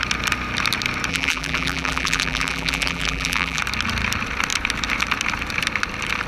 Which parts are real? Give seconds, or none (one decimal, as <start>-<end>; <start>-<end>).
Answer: 0.0-1.1; 3.6-6.3